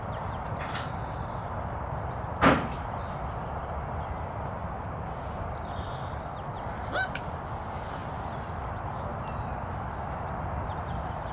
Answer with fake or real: real